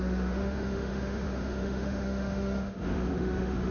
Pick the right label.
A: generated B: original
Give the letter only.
A